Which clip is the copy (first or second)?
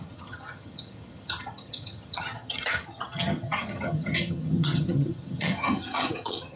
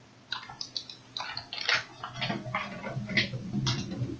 first